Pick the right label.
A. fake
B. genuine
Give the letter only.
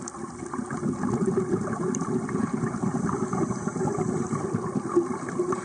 B